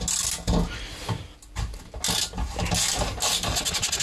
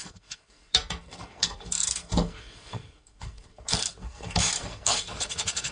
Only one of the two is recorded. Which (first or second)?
first